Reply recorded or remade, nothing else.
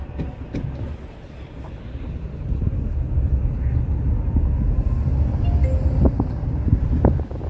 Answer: recorded